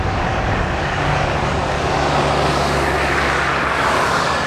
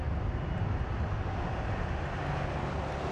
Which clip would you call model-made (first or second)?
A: first